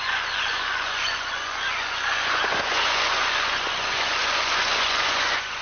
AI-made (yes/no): yes